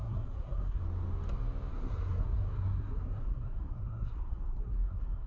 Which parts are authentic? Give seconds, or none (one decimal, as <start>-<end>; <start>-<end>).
0.8-1.7

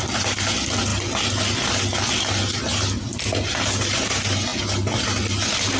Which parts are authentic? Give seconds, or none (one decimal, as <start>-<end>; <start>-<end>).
0.0-5.8

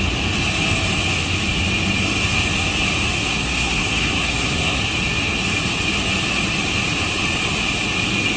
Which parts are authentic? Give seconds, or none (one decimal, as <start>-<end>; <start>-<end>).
0.0-3.3; 4.8-8.4

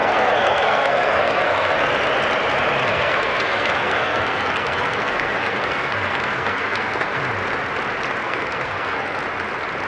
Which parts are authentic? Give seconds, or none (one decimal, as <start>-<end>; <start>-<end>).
1.9-2.8; 7.2-8.2; 9.2-9.9

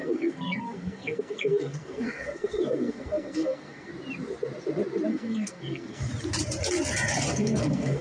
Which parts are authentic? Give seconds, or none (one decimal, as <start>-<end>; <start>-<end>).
3.9-5.1; 6.1-7.3